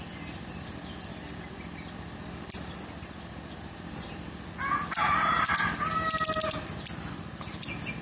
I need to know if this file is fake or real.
real